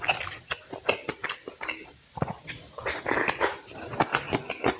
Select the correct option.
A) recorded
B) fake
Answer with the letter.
A